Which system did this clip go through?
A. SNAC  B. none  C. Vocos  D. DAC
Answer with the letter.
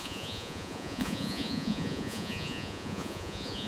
C